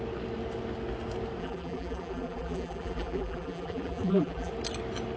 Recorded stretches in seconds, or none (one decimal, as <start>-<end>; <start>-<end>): 0.0-1.4; 4.5-5.2